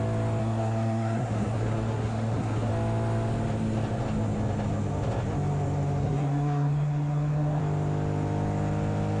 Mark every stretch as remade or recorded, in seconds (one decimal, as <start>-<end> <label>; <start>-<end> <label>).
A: 0.0-0.4 recorded; 0.4-2.7 remade; 2.7-6.0 recorded; 6.0-7.6 remade; 7.6-9.2 recorded

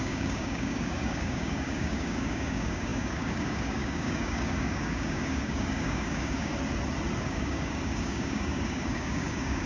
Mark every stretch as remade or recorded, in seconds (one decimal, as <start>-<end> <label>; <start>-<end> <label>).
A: 0.0-6.5 remade; 6.5-7.2 recorded; 7.2-9.7 remade

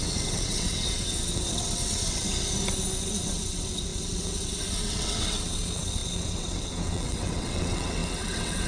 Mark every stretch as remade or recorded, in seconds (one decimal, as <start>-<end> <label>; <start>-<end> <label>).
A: 0.0-2.3 remade; 2.3-3.0 recorded; 3.0-8.7 remade